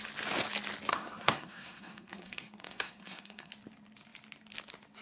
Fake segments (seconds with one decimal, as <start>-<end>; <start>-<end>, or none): 0.9-3.5